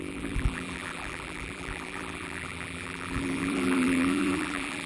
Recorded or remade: remade